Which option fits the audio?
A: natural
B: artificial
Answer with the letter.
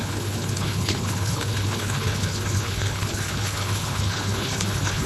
B